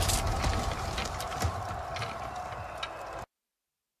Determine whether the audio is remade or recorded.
recorded